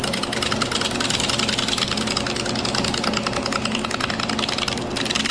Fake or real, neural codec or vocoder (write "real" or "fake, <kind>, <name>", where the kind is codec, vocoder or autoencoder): real